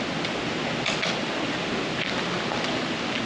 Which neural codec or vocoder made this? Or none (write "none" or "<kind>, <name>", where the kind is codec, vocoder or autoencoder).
none